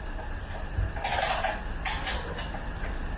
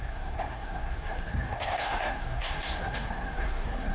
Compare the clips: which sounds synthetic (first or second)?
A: second